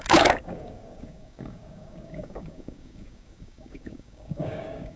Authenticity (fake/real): fake